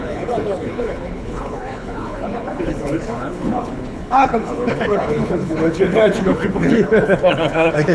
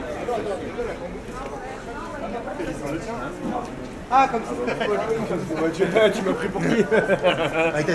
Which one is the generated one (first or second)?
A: first